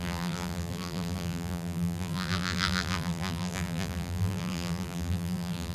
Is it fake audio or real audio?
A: fake